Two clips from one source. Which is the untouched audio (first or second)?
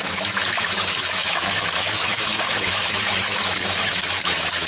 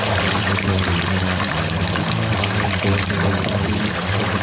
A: second